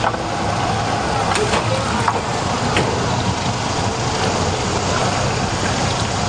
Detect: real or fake real